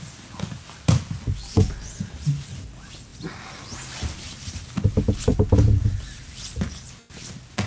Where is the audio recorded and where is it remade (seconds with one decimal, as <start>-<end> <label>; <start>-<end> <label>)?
0.0-7.7 recorded